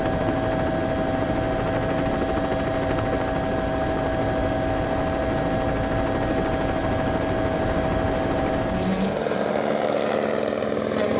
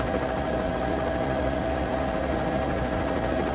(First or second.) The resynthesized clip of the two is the second